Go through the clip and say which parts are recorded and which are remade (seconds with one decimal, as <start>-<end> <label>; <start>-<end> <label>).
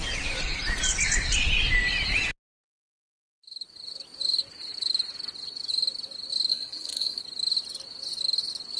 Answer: 0.0-6.5 recorded; 6.5-7.2 remade; 7.2-8.8 recorded